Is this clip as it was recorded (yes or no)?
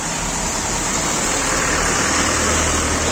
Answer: yes